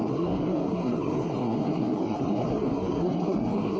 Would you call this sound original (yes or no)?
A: no